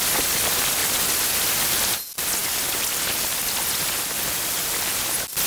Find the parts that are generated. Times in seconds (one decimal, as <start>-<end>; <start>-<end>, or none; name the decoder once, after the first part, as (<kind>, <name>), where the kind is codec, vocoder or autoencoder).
none